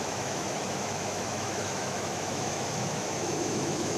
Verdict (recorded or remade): remade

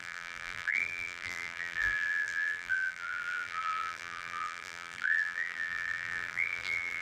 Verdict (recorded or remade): remade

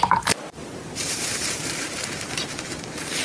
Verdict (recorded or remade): remade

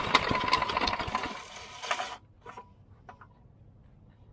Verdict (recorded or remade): recorded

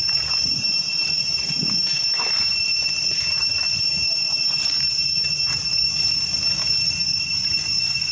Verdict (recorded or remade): recorded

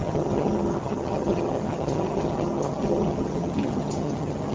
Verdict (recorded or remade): remade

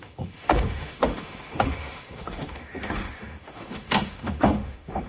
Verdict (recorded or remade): remade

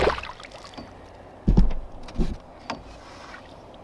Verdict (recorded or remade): recorded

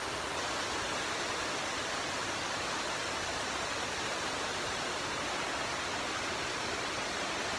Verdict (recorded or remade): recorded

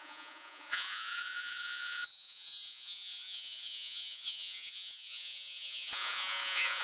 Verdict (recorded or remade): remade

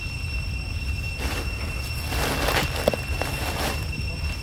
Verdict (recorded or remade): recorded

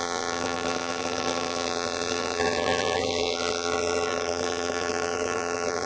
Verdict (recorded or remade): remade